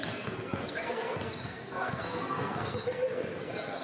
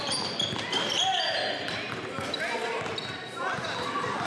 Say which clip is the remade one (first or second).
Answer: first